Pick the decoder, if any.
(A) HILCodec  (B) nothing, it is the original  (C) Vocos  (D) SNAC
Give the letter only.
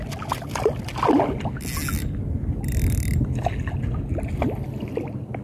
B